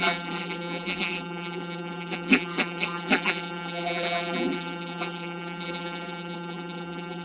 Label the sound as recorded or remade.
remade